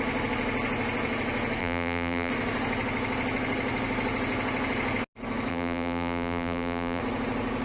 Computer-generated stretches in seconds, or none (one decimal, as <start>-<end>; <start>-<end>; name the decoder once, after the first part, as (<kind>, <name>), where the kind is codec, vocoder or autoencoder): 1.6-2.3 (vocoder, BigVGAN v2); 5.5-7.0